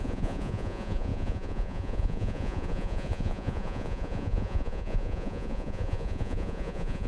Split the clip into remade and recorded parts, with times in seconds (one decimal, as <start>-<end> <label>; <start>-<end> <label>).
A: 0.0-7.1 remade